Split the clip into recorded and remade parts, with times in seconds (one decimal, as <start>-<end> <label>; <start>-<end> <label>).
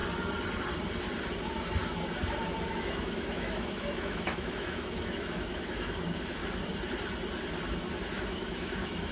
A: 0.0-2.7 recorded; 2.7-6.4 remade; 6.4-8.1 recorded; 8.1-9.1 remade